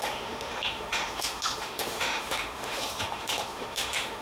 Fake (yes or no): yes